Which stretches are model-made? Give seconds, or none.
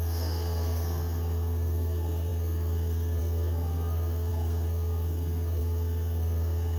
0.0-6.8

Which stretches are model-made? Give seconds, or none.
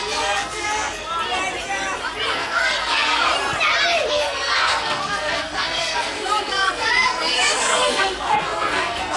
0.0-1.1; 2.3-3.3; 4.1-9.2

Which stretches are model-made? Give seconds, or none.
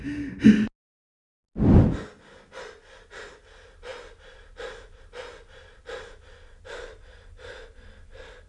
none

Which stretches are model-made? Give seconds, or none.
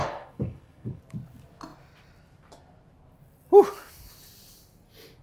0.0-1.0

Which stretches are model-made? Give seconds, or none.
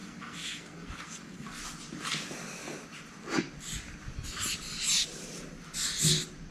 0.0-1.6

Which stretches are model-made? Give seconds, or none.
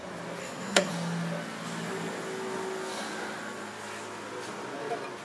0.4-0.9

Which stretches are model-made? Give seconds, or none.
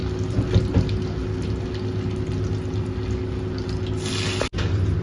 none